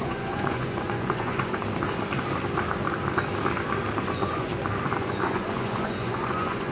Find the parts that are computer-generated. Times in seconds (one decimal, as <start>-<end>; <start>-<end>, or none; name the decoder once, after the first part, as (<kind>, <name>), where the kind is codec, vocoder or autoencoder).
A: 0.0-1.6 (vocoder, Vocos); 4.0-4.5; 5.0-6.7